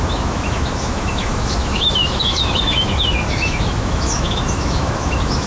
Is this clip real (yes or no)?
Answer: no